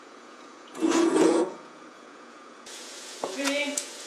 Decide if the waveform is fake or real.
fake